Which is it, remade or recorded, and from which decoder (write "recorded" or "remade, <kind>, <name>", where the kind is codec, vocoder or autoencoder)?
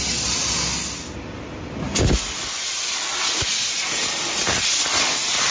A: recorded